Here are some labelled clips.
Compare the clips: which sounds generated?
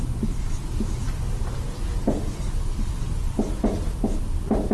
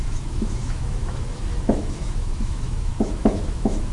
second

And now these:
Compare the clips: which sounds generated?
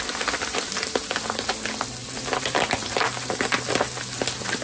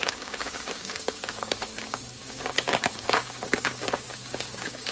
second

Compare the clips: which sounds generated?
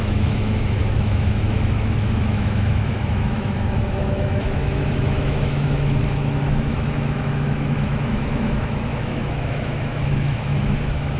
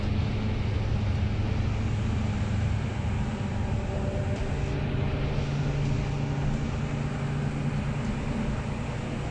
first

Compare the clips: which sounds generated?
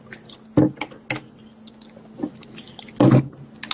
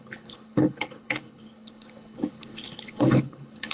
second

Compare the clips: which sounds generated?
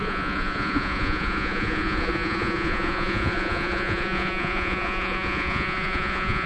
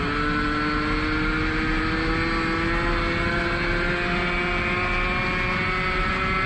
first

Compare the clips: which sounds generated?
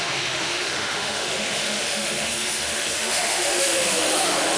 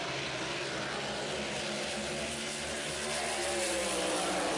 first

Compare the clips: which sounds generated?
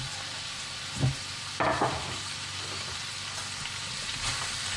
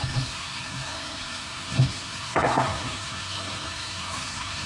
second